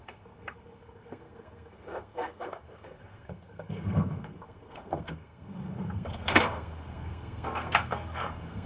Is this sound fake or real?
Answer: fake